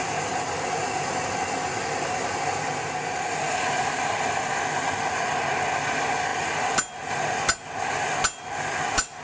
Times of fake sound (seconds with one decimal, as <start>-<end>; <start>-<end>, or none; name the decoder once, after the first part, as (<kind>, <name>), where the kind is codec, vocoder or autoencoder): none